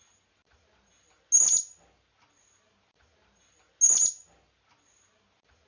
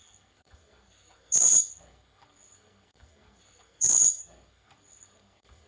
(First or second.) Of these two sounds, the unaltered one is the first